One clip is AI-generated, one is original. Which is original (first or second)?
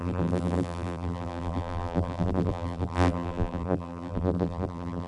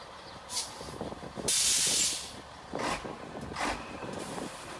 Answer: second